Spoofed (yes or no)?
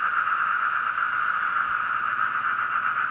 no